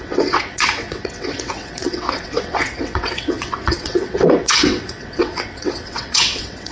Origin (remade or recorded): remade